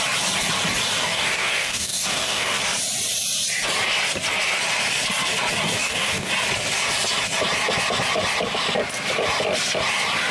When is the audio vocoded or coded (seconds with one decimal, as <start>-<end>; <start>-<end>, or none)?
1.0-2.6; 5.8-6.3